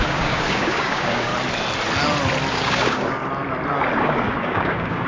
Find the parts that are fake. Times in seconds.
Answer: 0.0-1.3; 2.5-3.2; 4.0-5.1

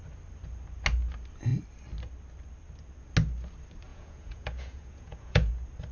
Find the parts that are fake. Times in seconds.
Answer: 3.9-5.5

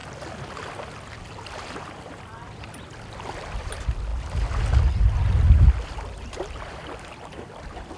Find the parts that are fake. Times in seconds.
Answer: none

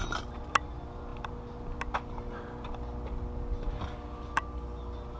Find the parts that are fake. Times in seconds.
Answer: none

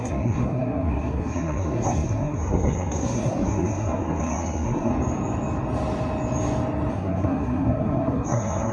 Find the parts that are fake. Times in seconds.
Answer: 0.0-4.9; 6.9-8.7